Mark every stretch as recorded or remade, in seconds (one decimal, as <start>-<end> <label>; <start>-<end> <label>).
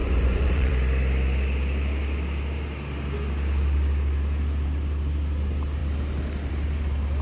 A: 0.0-0.7 remade; 0.7-7.2 recorded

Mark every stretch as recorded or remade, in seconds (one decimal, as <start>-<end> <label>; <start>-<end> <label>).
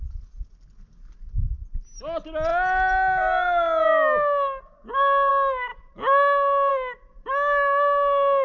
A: 0.0-8.4 recorded